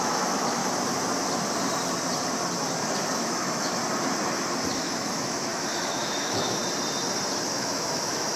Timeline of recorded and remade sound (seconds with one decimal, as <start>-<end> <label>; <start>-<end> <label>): 0.0-0.6 remade; 0.6-3.1 recorded; 3.1-3.8 remade; 3.8-4.7 recorded; 4.7-6.6 remade; 6.6-7.5 recorded; 7.5-8.4 remade